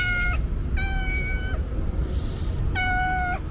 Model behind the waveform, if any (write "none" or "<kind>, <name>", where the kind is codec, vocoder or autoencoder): none